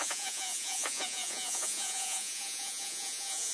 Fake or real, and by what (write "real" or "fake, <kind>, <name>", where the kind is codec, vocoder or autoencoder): fake, vocoder, Vocos